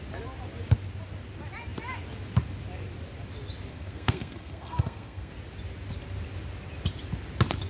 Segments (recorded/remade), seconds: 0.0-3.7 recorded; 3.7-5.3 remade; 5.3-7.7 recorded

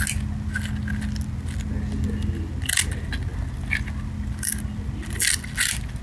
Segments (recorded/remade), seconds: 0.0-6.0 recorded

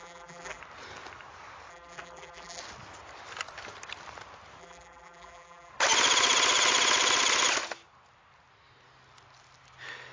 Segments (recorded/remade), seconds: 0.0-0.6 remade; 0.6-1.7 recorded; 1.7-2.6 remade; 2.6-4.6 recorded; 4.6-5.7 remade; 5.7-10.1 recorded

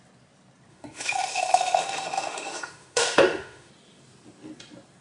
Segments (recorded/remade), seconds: 0.0-0.7 recorded; 0.7-3.7 remade; 3.7-5.0 recorded

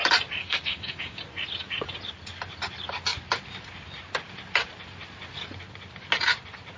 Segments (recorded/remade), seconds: 0.0-0.4 recorded; 0.4-1.2 remade; 1.2-6.8 recorded

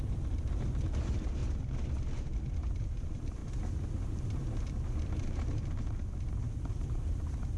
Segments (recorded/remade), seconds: 0.0-1.4 remade; 1.4-2.2 recorded; 2.2-3.4 remade; 3.4-4.0 recorded; 4.0-7.6 remade

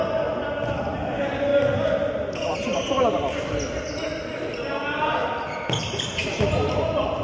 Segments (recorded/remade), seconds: 0.0-6.2 recorded; 6.2-6.8 remade; 6.8-7.2 recorded